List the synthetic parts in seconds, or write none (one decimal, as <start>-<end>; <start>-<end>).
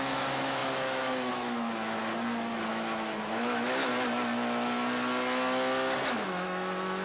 0.0-2.0; 2.7-3.9; 6.1-7.0